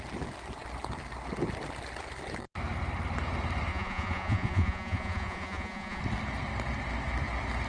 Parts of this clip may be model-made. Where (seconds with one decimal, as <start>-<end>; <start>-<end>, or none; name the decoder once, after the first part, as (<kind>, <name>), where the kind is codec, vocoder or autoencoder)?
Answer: 3.7-6.0 (vocoder, Vocos)